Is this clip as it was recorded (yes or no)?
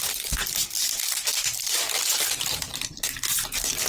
yes